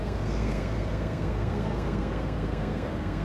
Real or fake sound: fake